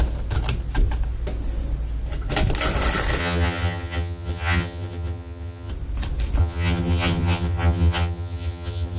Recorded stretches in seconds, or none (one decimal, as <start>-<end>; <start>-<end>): 0.0-3.2; 5.7-6.4